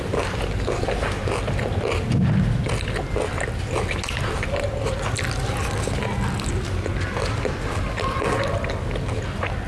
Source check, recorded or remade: recorded